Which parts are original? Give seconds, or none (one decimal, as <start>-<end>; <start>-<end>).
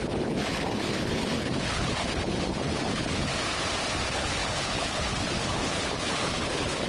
3.3-4.0